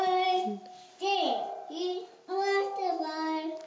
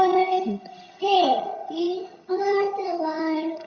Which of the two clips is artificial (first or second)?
second